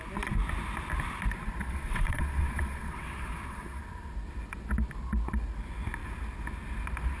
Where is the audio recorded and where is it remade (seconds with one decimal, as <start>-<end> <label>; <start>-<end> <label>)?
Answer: 0.0-1.6 recorded; 1.6-3.8 remade; 3.8-7.2 recorded

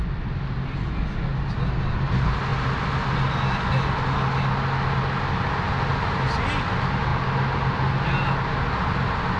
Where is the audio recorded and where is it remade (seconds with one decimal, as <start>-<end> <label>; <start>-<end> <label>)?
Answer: 0.0-9.4 recorded

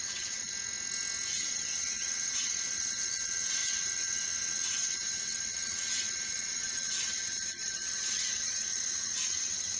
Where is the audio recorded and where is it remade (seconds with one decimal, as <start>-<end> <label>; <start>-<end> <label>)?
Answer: 0.0-0.5 remade; 0.5-1.4 recorded; 1.4-9.8 remade

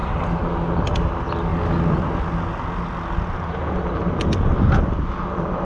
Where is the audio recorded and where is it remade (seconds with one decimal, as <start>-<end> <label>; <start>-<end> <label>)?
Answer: 0.0-5.6 recorded